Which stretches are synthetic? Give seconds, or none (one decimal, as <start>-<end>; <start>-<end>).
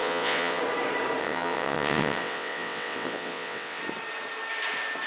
0.0-0.6; 1.2-3.8